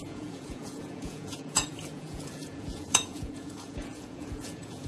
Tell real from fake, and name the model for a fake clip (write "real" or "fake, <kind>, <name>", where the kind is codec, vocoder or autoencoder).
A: fake, vocoder, Vocos